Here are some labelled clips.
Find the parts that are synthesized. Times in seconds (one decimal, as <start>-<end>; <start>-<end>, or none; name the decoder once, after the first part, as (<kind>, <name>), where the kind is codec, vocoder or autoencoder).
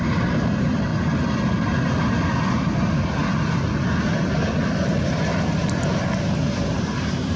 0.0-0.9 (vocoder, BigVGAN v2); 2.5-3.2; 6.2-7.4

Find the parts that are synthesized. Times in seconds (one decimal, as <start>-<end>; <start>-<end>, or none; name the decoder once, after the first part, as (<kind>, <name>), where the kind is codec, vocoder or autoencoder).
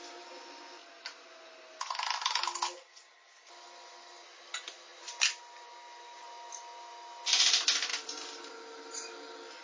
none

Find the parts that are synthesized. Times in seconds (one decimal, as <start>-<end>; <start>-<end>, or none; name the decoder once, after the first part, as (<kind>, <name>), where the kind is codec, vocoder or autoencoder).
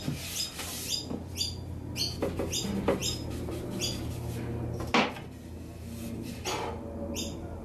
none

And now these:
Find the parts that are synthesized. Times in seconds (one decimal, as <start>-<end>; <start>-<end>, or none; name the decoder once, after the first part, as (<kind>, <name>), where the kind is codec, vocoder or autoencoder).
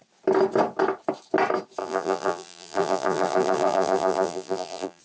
1.8-5.0 (vocoder, BigVGAN v2)